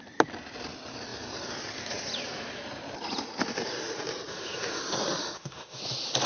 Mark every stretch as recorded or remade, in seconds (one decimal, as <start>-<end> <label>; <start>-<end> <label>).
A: 0.0-4.3 recorded; 4.3-4.8 remade; 4.8-5.2 recorded; 5.2-5.8 remade; 5.8-6.3 recorded